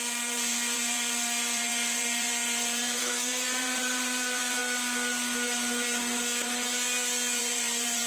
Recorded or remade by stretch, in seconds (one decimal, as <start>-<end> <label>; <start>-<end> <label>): 0.0-4.6 remade; 4.6-7.4 recorded; 7.4-8.1 remade